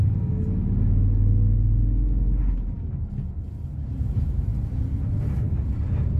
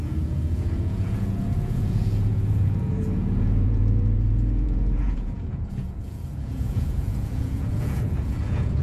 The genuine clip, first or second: first